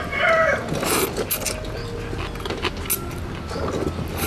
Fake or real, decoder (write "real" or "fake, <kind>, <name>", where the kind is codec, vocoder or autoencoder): real